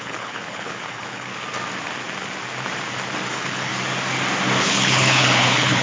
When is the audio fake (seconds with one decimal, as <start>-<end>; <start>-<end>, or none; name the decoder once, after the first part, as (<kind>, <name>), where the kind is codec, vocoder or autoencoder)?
0.0-1.3 (codec, HILCodec); 3.3-3.7; 4.6-5.8